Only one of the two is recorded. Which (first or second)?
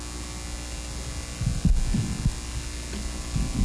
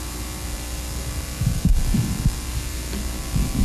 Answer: first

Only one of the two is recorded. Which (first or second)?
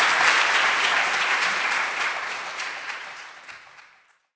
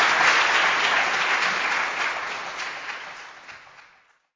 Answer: second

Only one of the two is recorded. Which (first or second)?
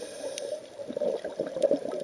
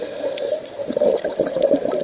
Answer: second